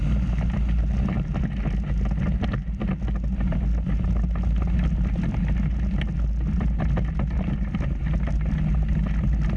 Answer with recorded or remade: recorded